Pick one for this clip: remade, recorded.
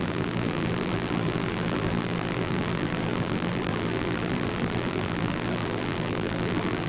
remade